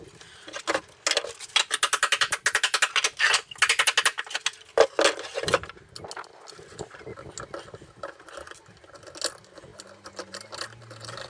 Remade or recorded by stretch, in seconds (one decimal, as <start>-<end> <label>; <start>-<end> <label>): 0.0-11.3 recorded

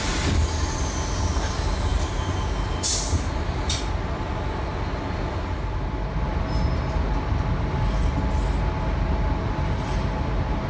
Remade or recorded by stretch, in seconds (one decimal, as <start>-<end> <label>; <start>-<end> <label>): 0.0-10.7 recorded

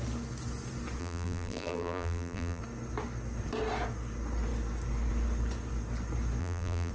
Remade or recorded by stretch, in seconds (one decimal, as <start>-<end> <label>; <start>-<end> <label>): 0.0-1.0 recorded; 1.0-2.6 remade; 2.6-6.4 recorded; 6.4-6.9 remade

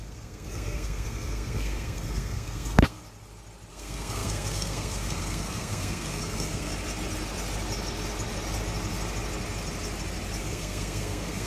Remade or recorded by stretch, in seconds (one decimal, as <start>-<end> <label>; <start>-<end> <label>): 0.0-3.0 remade; 3.0-3.7 recorded; 3.7-6.7 remade; 6.7-10.4 recorded; 10.4-11.5 remade

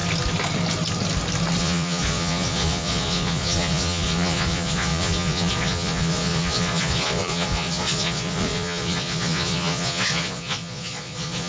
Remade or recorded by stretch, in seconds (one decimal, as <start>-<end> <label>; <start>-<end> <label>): 0.0-1.6 recorded; 1.6-11.5 remade